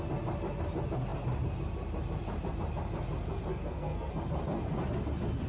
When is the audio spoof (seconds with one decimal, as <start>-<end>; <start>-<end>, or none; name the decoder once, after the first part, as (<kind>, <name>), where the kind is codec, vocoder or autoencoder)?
3.5-4.1 (codec, SNAC)